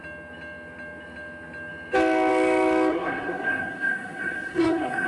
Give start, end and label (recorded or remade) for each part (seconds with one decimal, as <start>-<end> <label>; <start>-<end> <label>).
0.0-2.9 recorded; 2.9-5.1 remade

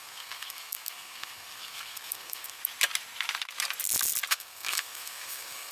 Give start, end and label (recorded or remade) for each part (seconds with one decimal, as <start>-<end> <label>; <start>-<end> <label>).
0.0-2.6 remade; 2.6-4.3 recorded; 4.3-5.7 remade

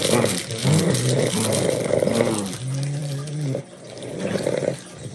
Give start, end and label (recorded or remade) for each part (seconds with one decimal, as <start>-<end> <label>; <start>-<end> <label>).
0.0-5.1 recorded

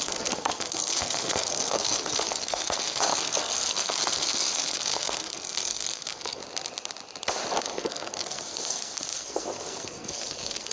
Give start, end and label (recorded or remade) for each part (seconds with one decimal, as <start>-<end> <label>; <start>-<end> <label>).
0.0-6.4 remade; 6.4-7.6 recorded; 7.6-10.7 remade

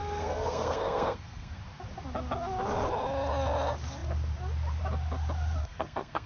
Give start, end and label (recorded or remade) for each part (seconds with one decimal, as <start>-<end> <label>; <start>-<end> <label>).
0.0-1.6 remade; 1.6-5.6 recorded; 5.6-6.3 remade